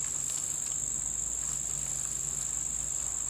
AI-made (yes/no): no